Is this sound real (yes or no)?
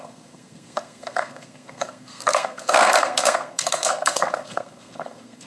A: no